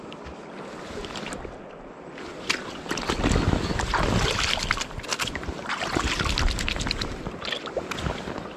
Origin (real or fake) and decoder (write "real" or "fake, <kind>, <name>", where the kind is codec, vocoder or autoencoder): real